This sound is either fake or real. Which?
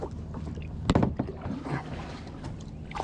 real